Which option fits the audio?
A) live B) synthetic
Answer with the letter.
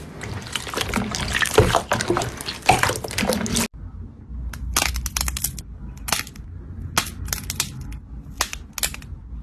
A